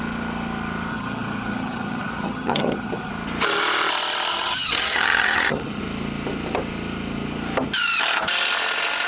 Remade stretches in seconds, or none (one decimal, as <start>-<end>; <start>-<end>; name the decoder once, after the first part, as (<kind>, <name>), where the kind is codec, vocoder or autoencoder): 0.9-3.1 (vocoder, HiFi-GAN); 4.3-5.8